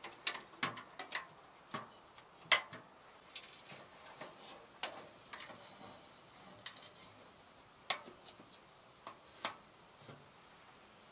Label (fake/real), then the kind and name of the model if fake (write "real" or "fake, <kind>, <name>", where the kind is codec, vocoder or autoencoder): real